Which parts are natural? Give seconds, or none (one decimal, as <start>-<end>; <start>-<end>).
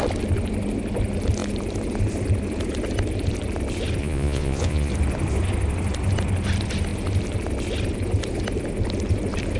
0.0-4.0; 4.9-9.6